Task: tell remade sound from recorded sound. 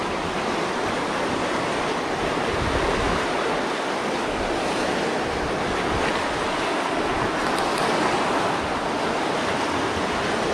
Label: recorded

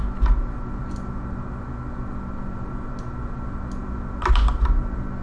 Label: recorded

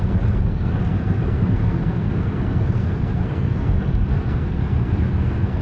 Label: remade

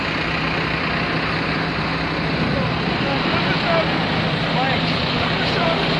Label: recorded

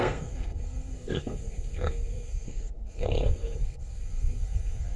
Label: remade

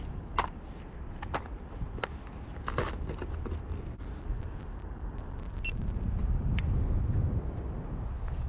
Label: recorded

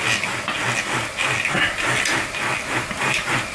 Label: recorded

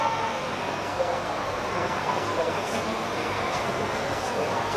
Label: remade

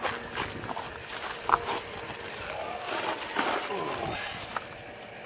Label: recorded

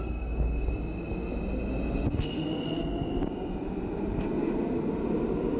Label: recorded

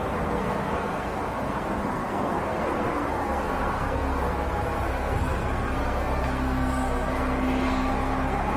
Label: remade